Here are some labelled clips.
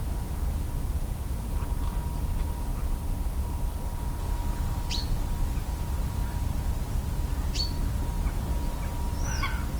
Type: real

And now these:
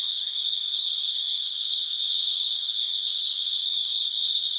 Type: fake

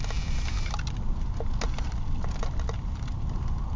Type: real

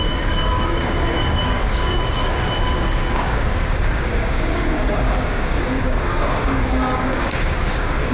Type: fake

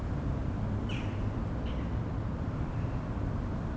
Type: real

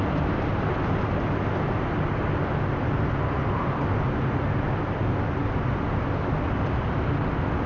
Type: real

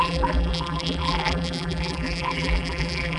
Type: fake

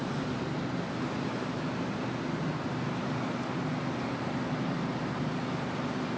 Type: real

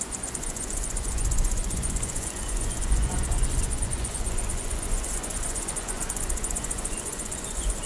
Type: fake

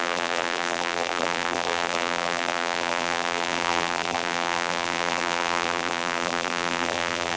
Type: fake